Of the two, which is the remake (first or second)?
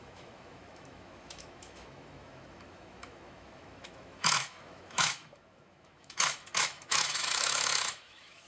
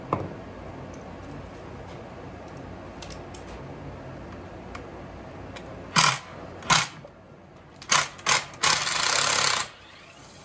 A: first